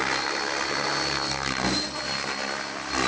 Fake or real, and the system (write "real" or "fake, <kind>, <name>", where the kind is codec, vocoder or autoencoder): real